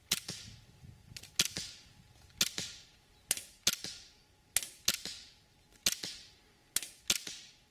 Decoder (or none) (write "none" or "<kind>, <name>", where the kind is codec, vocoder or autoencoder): none